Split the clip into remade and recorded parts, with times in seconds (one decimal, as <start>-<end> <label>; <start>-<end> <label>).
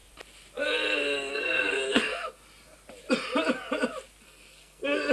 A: 0.0-1.3 recorded; 1.3-2.4 remade; 2.4-4.2 recorded; 4.2-5.1 remade